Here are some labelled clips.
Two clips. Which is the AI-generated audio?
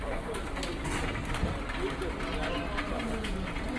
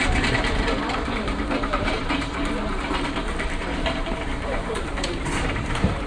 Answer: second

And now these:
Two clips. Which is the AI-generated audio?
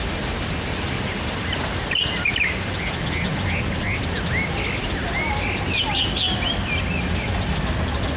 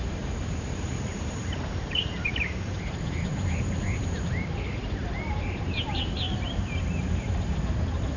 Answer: second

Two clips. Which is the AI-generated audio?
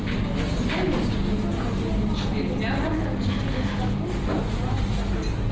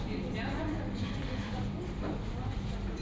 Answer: second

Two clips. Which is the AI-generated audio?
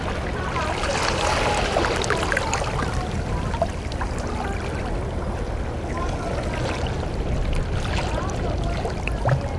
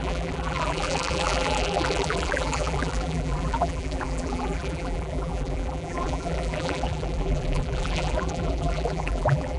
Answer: second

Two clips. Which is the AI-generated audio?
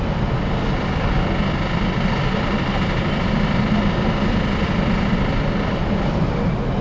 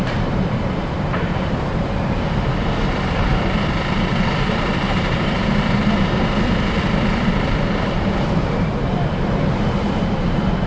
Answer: second